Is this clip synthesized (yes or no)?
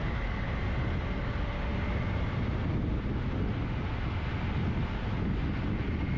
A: no